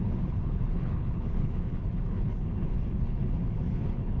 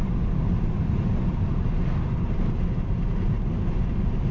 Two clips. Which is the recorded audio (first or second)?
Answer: second